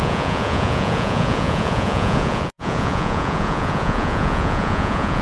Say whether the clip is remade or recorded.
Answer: remade